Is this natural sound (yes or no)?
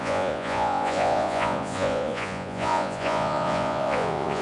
no